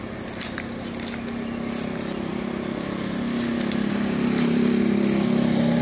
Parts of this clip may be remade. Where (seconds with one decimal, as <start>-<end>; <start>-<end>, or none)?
none